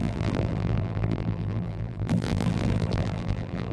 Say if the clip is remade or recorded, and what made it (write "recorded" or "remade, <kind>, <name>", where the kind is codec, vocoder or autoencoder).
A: remade, vocoder, BigVGAN v2